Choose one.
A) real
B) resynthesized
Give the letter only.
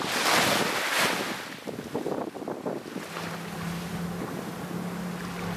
A